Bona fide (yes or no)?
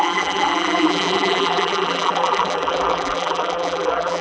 no